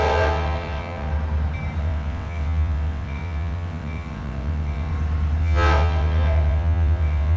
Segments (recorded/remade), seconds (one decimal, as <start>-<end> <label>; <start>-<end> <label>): 0.0-1.1 remade; 1.1-1.8 recorded; 1.8-4.9 remade; 4.9-5.4 recorded; 5.4-7.4 remade